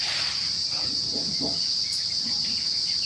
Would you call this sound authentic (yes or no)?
yes